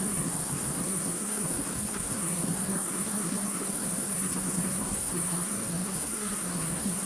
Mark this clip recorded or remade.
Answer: remade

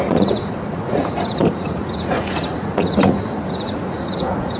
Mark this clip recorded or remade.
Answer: remade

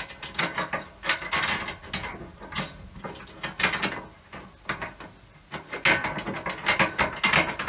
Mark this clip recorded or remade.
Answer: recorded